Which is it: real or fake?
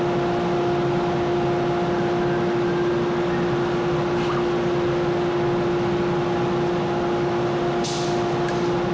real